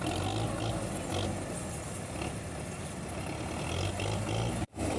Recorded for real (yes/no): yes